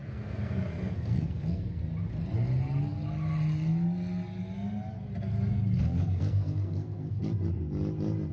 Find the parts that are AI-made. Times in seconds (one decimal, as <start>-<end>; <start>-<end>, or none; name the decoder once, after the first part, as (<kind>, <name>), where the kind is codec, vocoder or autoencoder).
0.0-1.8 (codec, SNAC); 5.5-7.2